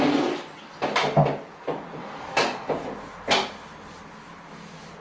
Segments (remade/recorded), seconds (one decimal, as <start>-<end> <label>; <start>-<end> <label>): 0.0-2.0 recorded; 2.0-2.7 remade; 2.7-5.0 recorded